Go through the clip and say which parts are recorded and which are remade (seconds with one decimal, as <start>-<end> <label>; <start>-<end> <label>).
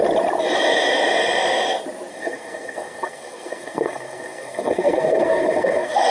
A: 0.0-2.1 recorded; 2.1-6.1 remade